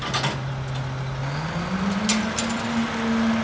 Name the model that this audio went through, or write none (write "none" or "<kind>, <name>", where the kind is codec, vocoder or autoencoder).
none